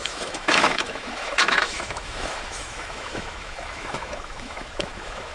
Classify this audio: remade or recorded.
remade